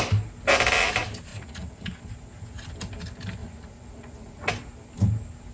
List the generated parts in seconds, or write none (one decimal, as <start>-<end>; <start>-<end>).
1.3-2.0; 3.4-4.5

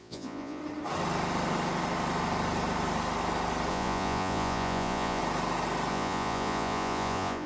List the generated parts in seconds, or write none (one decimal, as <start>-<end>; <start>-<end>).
0.0-0.6; 3.7-5.2; 5.9-7.5

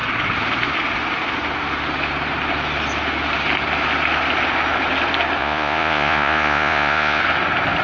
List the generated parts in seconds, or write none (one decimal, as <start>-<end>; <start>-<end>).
5.4-7.2

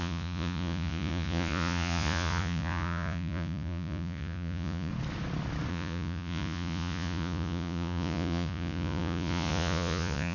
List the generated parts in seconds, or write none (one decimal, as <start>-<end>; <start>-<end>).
0.0-4.9; 5.7-10.3